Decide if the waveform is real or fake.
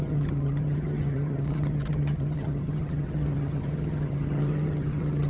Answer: fake